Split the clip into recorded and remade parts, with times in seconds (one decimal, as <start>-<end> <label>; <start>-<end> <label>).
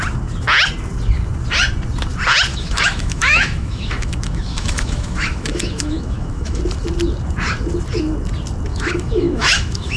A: 0.0-2.5 recorded; 2.5-6.6 remade; 6.6-8.7 recorded; 8.7-10.0 remade